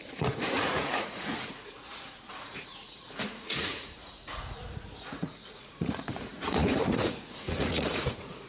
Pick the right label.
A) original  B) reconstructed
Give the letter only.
B